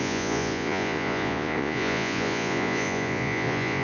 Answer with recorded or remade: remade